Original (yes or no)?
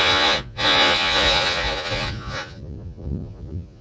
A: no